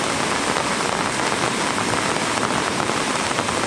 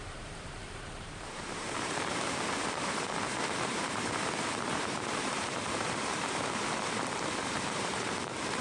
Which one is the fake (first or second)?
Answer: second